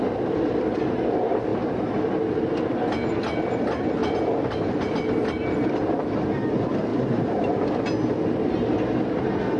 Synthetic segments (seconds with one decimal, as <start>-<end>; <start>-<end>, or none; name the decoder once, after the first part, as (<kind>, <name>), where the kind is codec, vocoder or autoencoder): 4.0-5.8 (vocoder, BigVGAN v2)